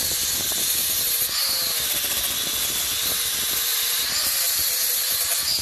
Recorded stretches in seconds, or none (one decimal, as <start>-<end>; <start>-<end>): 0.0-5.6